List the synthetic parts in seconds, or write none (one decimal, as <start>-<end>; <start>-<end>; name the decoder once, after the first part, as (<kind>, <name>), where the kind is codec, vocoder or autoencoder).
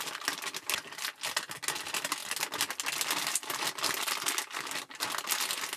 none